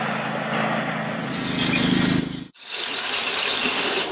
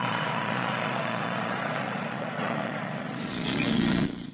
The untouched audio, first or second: first